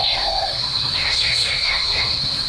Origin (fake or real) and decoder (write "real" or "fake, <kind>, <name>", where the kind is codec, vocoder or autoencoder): fake, codec, SNAC